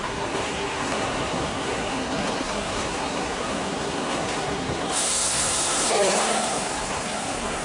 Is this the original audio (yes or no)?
no